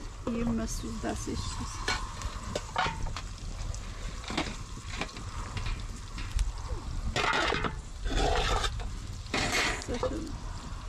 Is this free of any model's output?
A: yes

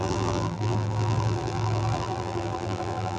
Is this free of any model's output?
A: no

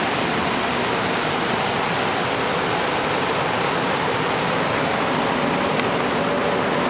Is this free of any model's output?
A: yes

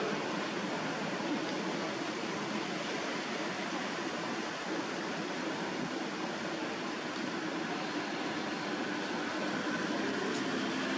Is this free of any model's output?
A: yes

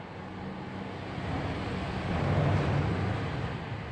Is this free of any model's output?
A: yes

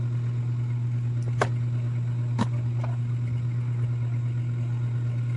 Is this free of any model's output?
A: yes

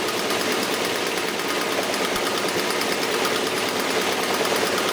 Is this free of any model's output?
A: yes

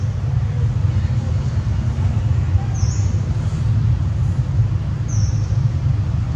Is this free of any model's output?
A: yes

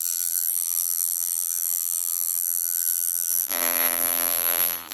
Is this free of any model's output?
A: no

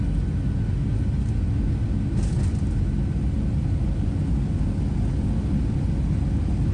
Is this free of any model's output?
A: yes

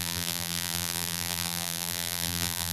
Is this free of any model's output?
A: no